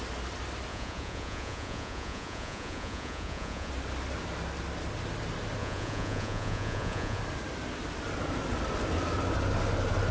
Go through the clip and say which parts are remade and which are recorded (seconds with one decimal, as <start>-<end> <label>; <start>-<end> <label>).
0.0-0.7 recorded; 0.7-3.7 remade; 3.7-5.6 recorded; 5.6-7.2 remade; 7.2-10.1 recorded